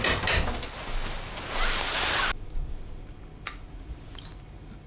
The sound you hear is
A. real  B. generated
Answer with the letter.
A